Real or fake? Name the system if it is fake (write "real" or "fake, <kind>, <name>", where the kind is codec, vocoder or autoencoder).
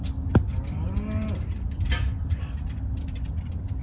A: real